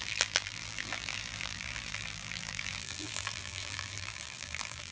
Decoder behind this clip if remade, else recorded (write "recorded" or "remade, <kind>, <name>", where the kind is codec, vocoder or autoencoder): remade, vocoder, BigVGAN v2